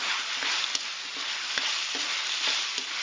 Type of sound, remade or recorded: recorded